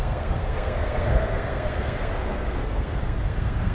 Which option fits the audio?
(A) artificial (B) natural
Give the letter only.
A